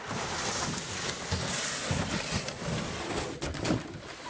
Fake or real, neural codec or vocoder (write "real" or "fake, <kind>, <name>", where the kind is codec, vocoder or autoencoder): real